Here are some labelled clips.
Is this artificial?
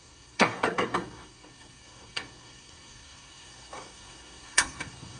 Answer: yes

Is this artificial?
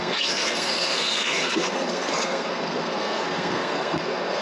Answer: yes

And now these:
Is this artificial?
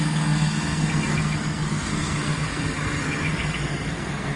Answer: yes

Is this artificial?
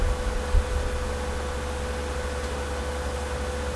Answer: no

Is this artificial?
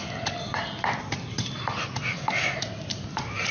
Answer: no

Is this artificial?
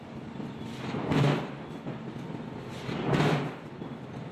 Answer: no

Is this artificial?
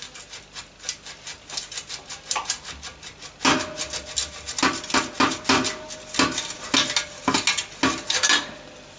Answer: no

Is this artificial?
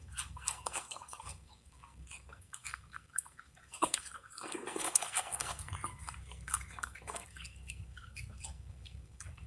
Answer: yes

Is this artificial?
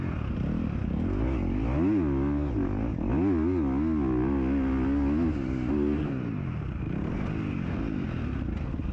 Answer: no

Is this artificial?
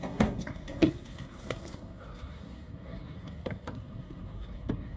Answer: yes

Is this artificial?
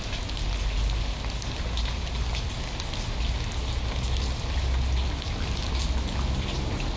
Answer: no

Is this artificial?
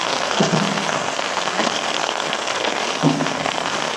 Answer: yes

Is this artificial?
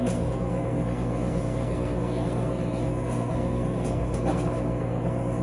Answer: yes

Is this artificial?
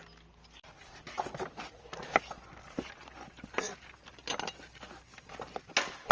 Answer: no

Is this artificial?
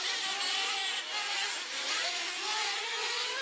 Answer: no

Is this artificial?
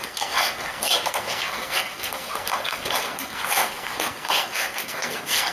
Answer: yes